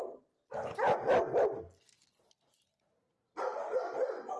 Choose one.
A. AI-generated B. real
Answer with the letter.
A